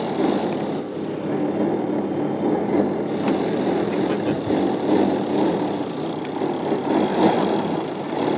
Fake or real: real